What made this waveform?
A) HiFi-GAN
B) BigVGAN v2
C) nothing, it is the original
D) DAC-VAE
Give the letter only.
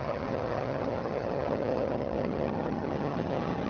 A